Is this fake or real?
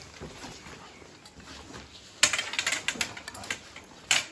real